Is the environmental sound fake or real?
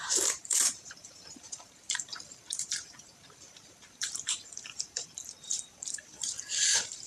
fake